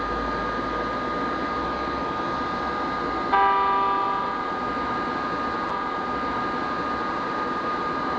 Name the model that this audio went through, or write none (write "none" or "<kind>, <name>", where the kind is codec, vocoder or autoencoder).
none